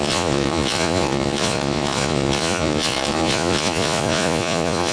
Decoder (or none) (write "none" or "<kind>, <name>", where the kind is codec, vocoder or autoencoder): vocoder, Vocos